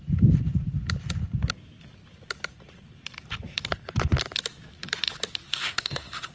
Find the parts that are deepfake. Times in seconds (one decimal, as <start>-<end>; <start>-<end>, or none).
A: 5.5-6.3